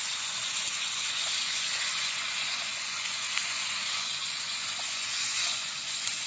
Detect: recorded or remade remade